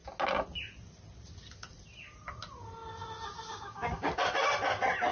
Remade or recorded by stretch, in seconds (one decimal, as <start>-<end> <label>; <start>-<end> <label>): 0.0-3.5 recorded; 3.5-4.1 remade; 4.1-5.1 recorded